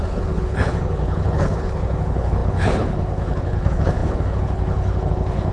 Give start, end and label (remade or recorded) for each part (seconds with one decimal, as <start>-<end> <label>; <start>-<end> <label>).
0.0-5.5 remade